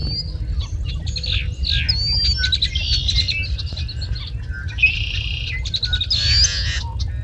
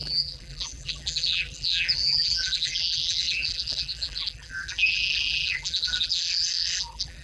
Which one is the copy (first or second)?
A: second